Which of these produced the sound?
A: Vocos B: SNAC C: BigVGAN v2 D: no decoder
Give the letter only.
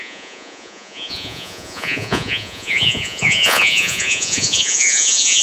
A